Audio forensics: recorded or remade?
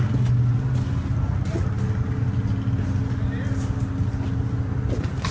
recorded